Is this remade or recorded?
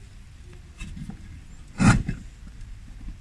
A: recorded